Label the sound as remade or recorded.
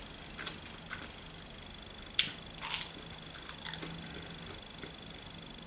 recorded